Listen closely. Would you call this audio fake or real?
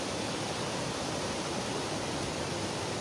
fake